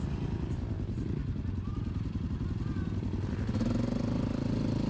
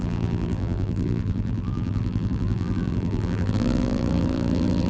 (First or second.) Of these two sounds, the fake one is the second